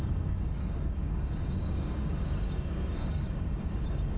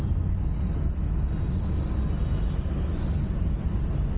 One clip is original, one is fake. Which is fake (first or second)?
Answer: first